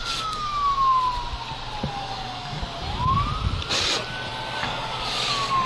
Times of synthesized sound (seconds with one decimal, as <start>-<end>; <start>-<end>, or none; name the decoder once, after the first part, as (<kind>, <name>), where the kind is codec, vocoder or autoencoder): 0.0-0.5 (codec, DAC); 1.9-2.6; 4.6-5.7